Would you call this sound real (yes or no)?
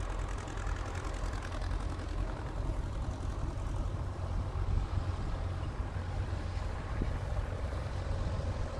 yes